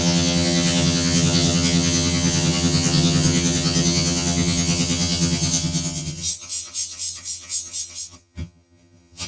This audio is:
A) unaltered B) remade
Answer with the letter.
B